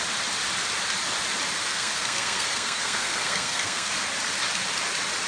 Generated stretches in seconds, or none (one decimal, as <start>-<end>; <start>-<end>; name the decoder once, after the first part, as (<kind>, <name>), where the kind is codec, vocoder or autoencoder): 1.6-3.9 (codec, SNAC)